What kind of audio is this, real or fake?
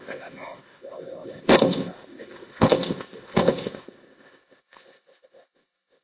fake